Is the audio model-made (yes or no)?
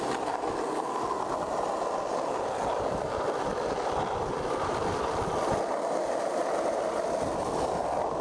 no